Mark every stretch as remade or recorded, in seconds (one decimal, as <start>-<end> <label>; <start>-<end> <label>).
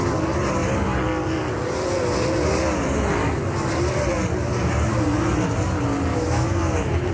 0.0-6.1 recorded; 6.1-7.1 remade